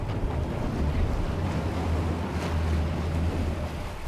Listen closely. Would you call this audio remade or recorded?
recorded